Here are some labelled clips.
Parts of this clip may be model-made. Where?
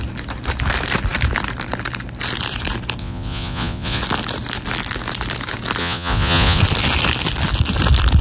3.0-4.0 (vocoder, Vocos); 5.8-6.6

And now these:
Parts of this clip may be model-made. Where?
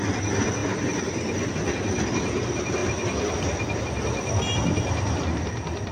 none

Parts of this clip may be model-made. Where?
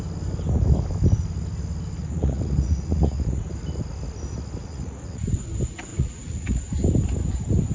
2.0-3.4 (vocoder, Vocos); 4.6-5.3; 5.9-6.6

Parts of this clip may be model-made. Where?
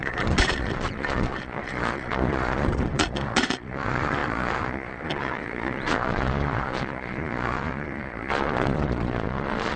0.0-9.8 (vocoder, Vocos)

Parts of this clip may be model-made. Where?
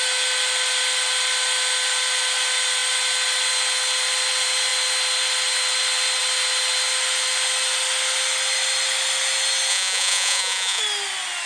9.7-10.8 (vocoder, Vocos)